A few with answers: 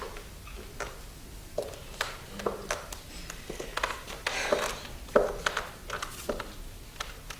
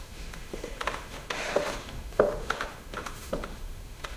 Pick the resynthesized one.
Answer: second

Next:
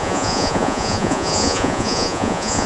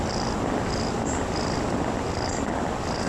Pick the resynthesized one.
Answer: first